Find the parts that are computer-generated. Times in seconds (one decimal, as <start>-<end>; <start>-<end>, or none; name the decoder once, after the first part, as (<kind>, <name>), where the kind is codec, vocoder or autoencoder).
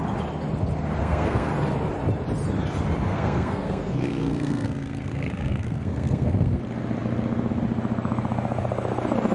1.0-1.5 (codec, SNAC); 3.1-6.6